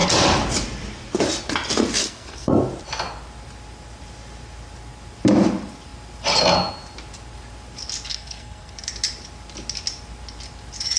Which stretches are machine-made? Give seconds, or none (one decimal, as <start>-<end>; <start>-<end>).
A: 2.0-2.5; 8.1-8.9